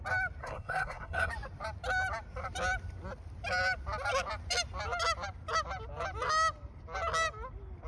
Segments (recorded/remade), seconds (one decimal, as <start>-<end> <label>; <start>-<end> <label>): 0.0-0.4 recorded; 0.4-1.3 remade; 1.3-7.9 recorded

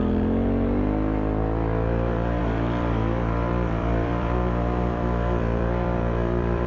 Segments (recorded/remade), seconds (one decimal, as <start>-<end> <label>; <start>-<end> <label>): 0.0-2.4 recorded; 2.4-6.7 remade

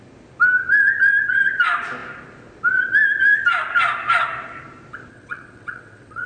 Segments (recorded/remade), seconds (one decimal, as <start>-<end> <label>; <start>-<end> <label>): 0.0-5.1 recorded; 5.1-6.3 remade

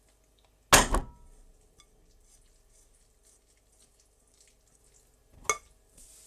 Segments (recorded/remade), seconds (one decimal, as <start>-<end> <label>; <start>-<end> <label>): 0.0-6.3 recorded

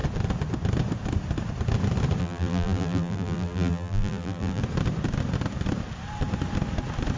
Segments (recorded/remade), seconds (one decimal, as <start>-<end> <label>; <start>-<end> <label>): 0.0-2.2 recorded; 2.2-4.6 remade; 4.6-7.2 recorded